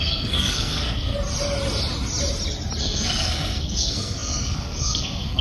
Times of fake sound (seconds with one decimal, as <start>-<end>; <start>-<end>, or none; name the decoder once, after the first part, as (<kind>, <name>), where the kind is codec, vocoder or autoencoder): 0.0-1.1 (codec, SNAC); 2.8-5.4